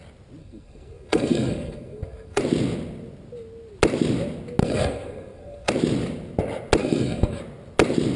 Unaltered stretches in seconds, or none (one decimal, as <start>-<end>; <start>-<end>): 0.0-0.4; 2.4-4.6; 5.7-6.8; 7.4-8.2